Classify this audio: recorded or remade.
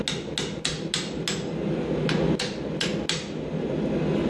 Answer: recorded